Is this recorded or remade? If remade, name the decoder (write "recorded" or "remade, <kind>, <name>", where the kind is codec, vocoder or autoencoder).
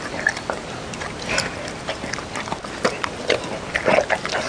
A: recorded